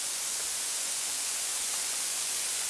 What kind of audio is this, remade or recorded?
remade